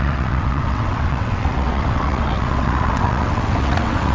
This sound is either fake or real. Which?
fake